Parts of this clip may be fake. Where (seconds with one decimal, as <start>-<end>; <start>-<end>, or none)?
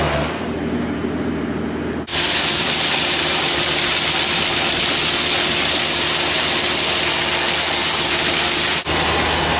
2.1-3.7; 7.8-8.4